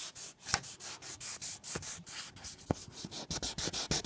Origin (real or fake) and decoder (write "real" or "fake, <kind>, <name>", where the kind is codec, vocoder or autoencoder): real